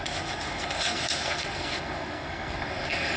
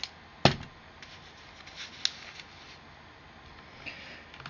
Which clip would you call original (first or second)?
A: second